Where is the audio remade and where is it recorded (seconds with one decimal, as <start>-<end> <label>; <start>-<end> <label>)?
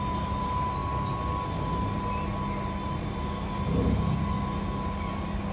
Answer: 0.0-5.5 recorded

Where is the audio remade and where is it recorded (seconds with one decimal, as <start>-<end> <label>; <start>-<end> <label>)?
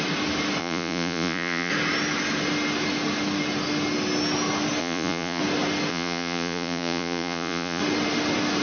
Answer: 0.0-0.6 recorded; 0.6-1.7 remade; 1.7-4.8 recorded; 4.8-5.4 remade; 5.4-5.9 recorded; 5.9-7.8 remade; 7.8-8.6 recorded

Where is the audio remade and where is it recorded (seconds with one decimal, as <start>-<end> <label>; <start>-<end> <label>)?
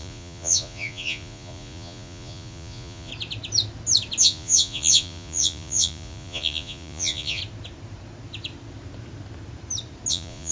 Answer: 0.0-3.1 remade; 3.1-4.2 recorded; 4.2-7.4 remade; 7.4-10.1 recorded; 10.1-10.5 remade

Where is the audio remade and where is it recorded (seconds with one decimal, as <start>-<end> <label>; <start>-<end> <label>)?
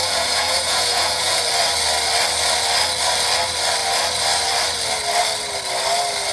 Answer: 0.0-1.4 remade; 1.4-6.3 recorded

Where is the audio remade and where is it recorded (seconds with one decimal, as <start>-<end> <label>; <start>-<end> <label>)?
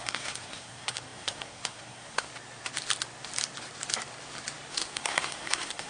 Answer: 0.0-2.3 remade; 2.3-4.7 recorded; 4.7-5.9 remade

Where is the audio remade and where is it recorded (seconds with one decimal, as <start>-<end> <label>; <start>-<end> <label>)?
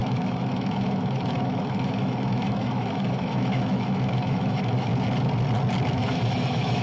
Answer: 0.0-4.9 remade; 4.9-5.9 recorded; 5.9-6.8 remade